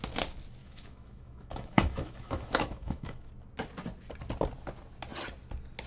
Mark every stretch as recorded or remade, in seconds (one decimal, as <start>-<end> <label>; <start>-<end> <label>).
0.0-0.6 recorded; 0.6-3.3 remade; 3.3-5.9 recorded